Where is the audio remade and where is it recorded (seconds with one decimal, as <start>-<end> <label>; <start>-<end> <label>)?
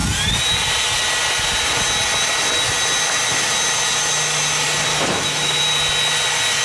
0.0-4.9 recorded; 4.9-5.6 remade; 5.6-6.6 recorded